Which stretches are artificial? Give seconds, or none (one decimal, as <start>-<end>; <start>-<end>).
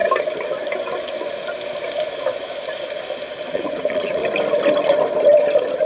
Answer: 3.5-4.2